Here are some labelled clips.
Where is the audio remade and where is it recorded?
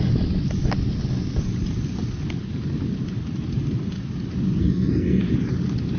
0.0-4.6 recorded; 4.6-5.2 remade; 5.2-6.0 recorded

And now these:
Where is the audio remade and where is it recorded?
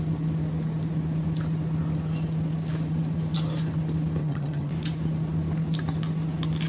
0.0-4.2 recorded; 4.2-4.7 remade; 4.7-6.7 recorded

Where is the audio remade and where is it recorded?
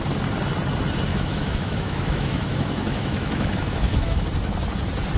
0.0-1.1 recorded; 1.1-4.2 remade; 4.2-5.2 recorded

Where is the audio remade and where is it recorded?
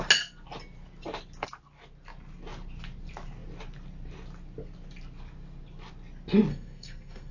0.0-6.5 recorded; 6.5-7.3 remade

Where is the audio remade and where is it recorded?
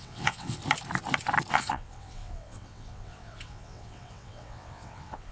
0.0-0.6 remade; 0.6-1.5 recorded; 1.5-5.3 remade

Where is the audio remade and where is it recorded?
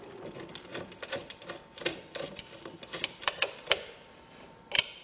0.0-1.9 recorded; 1.9-4.4 remade; 4.4-5.0 recorded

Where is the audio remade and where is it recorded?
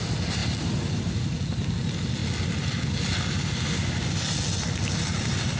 0.0-5.6 recorded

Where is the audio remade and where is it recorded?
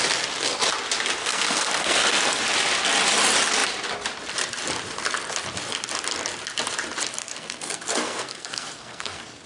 0.0-1.2 recorded; 1.2-2.4 remade; 2.4-7.2 recorded; 7.2-9.5 remade